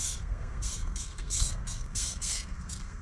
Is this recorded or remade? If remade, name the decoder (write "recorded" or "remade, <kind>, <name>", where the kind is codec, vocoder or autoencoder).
remade, codec, SNAC